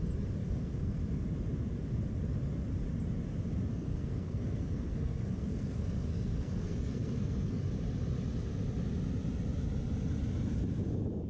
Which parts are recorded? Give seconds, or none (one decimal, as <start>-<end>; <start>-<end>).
0.0-0.4; 1.0-3.7; 7.6-11.3